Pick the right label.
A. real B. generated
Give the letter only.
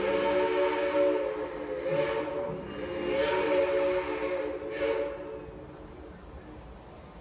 A